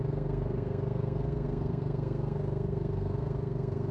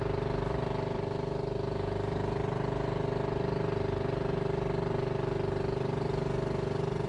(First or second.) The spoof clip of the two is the first